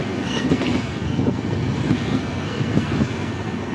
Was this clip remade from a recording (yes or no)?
yes